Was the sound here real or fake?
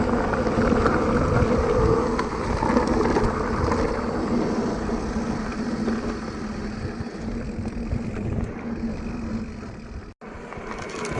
real